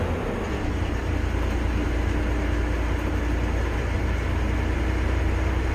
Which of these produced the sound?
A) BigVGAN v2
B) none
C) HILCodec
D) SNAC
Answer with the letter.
B